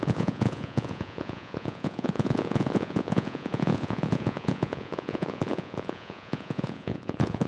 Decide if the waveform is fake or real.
fake